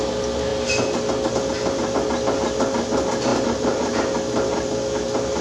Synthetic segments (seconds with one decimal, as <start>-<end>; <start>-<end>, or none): 3.3-3.9